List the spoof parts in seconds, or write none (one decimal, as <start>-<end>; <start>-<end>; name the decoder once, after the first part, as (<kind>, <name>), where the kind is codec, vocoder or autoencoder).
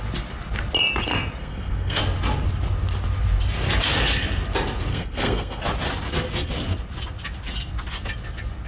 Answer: 1.4-2.0 (codec, SNAC); 4.9-5.6